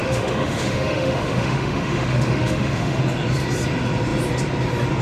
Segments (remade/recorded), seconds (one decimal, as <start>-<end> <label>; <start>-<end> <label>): 0.0-3.0 remade; 3.0-5.0 recorded